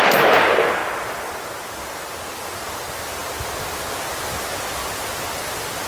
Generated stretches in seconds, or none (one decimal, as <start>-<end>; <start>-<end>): none